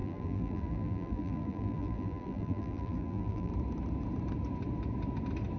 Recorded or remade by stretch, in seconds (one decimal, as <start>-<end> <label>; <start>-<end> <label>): 0.0-3.5 remade; 3.5-5.6 recorded